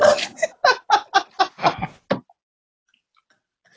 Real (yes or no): yes